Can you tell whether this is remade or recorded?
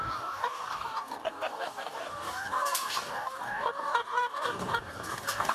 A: remade